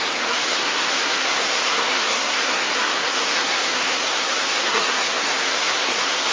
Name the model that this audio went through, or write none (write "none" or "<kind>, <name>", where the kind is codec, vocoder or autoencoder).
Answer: codec, SNAC